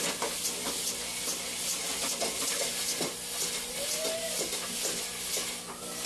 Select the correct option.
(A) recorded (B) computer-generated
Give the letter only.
A